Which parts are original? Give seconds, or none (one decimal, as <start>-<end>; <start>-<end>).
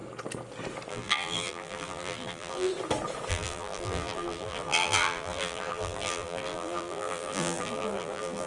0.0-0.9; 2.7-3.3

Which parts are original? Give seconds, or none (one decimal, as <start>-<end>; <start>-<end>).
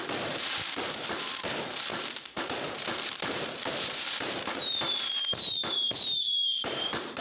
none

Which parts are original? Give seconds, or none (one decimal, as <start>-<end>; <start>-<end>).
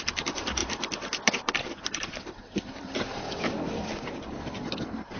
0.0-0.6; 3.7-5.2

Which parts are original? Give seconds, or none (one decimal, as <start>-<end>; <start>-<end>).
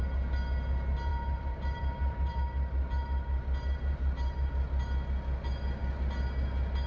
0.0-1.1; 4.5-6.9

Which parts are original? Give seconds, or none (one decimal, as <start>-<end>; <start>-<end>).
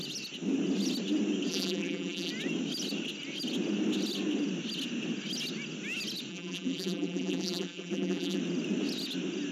0.0-1.5; 2.3-6.3; 8.4-9.5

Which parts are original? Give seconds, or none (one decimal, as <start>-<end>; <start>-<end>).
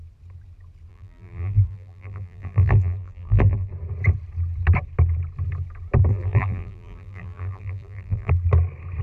0.0-0.9; 3.7-6.1; 8.3-9.0